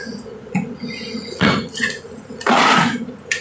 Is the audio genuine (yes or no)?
no